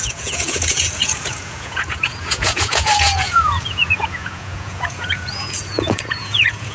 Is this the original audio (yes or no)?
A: no